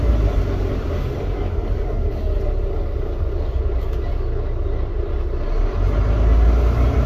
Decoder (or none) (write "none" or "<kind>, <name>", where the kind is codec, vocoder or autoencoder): none